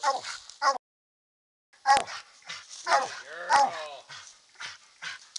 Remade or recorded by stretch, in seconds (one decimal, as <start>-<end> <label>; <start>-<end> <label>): 0.0-5.4 recorded